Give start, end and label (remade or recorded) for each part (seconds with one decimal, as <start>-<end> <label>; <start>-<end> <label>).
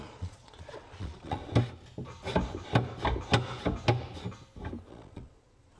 0.0-1.4 remade; 1.4-4.9 recorded; 4.9-5.8 remade